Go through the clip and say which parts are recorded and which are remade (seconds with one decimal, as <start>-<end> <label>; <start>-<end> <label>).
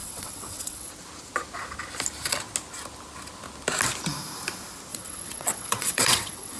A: 0.0-0.9 remade; 0.9-4.9 recorded; 4.9-6.6 remade